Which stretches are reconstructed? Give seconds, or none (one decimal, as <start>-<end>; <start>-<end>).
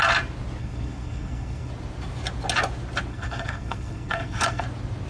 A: 0.6-1.7; 3.1-4.6